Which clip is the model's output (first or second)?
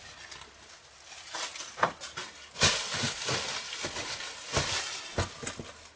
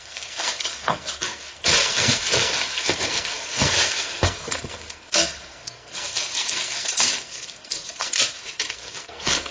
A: second